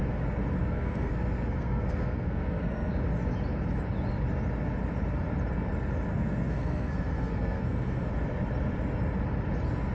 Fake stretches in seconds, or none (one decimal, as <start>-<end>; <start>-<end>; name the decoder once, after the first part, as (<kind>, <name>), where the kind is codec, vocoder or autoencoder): 0.6-2.9 (codec, SNAC); 6.1-8.1